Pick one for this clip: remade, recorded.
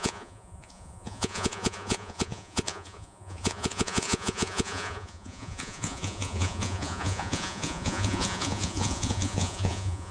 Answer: remade